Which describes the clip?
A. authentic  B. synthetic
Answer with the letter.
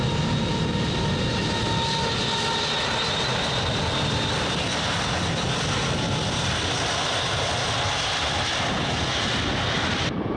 A